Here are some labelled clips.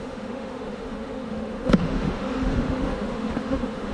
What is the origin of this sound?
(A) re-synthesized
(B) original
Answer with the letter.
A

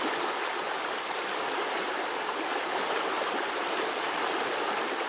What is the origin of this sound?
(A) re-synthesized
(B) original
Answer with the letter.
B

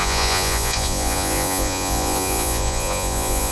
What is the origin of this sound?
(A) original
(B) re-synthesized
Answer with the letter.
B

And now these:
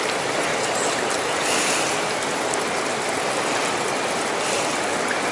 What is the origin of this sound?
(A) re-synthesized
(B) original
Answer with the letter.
B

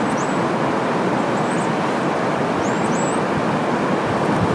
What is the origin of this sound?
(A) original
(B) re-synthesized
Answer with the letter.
A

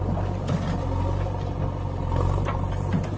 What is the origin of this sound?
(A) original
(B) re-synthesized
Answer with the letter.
A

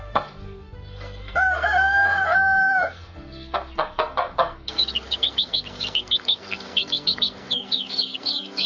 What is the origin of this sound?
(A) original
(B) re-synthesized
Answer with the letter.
B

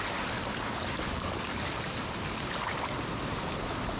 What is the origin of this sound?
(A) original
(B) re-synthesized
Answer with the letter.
A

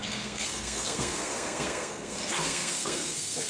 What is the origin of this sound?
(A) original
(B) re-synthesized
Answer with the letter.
B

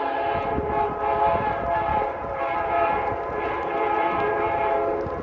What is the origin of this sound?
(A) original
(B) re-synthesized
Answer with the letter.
B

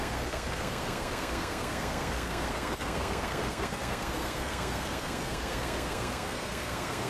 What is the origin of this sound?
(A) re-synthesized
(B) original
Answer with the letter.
A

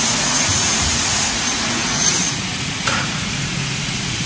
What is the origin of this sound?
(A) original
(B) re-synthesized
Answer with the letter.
B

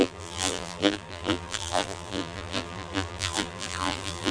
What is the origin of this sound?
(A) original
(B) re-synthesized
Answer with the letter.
B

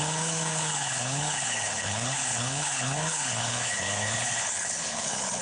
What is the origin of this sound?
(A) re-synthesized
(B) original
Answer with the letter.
A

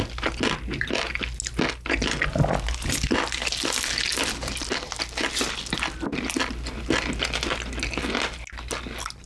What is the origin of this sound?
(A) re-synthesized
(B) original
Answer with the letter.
B